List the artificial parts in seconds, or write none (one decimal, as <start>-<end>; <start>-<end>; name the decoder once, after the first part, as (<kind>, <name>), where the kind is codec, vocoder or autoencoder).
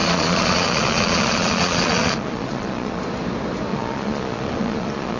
0.0-3.0 (vocoder, Vocos); 3.7-5.2